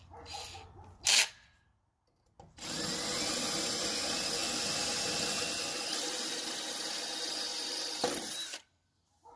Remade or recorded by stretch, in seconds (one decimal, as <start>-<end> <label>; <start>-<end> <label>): 0.0-9.4 recorded